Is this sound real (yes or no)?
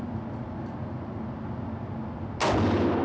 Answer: yes